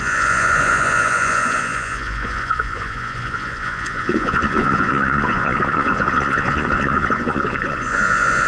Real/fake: fake